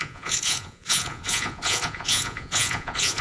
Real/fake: fake